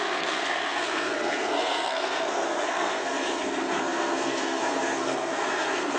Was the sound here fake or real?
fake